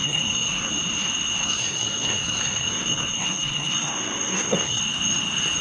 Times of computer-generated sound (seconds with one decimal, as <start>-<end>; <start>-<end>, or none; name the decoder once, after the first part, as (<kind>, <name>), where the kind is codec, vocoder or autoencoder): 0.0-0.7 (codec, SNAC); 1.4-4.8